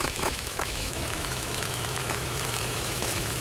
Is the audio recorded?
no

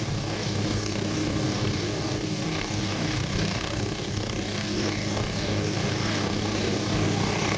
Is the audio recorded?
no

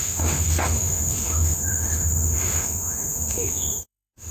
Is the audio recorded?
no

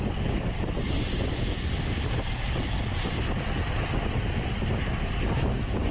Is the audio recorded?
yes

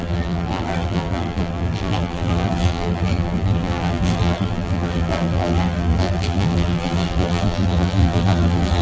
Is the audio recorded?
no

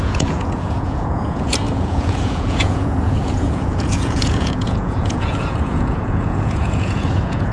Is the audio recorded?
no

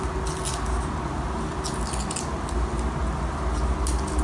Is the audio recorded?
yes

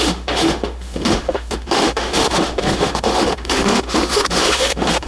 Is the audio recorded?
no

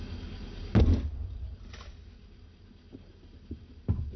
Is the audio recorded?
yes